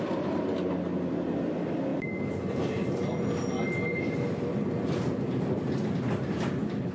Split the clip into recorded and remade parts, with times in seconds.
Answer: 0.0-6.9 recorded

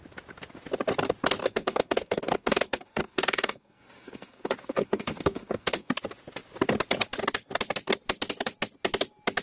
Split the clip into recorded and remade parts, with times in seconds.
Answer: 0.0-1.4 recorded; 1.4-5.9 remade; 5.9-9.4 recorded

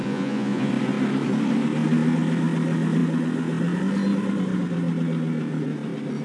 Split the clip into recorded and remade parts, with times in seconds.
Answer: 0.0-0.7 remade; 0.7-6.2 recorded

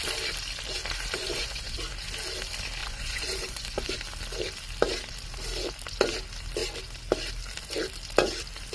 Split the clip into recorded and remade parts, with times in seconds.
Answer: 0.0-1.2 recorded; 1.2-1.8 remade; 1.8-2.8 recorded; 2.8-3.9 remade; 3.9-8.7 recorded